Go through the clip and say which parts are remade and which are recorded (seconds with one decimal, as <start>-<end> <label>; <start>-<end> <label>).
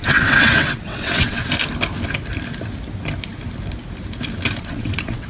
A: 0.0-1.4 remade; 1.4-4.6 recorded; 4.6-5.3 remade